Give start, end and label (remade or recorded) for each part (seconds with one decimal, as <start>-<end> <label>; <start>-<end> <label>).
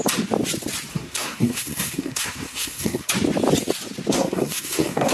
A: 0.0-0.9 recorded; 0.9-3.1 remade; 3.1-4.1 recorded; 4.1-5.1 remade